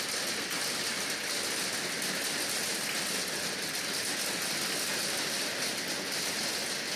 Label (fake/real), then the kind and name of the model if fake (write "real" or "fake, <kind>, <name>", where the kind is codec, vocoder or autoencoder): real